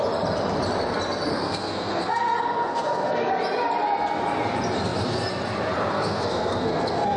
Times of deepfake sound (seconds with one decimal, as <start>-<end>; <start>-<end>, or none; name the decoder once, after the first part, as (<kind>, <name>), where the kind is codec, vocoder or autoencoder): 1.3-3.3 (codec, SNAC); 5.9-7.2